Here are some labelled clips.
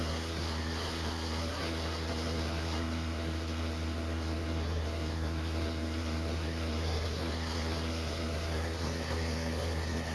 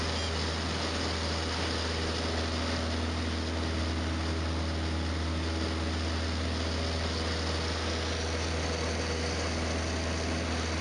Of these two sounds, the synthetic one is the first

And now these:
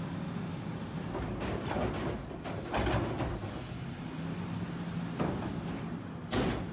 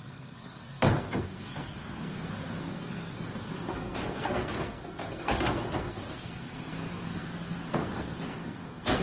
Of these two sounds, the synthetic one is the second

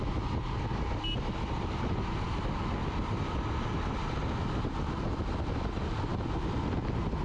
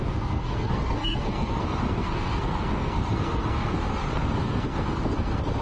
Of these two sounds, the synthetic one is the second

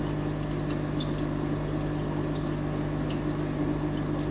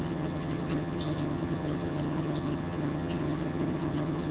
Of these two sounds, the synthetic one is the second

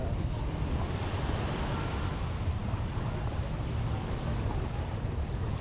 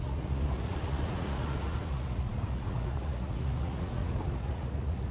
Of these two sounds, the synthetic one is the second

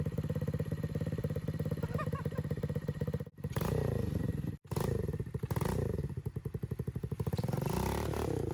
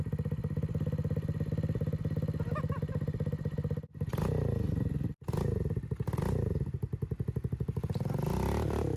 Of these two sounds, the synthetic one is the first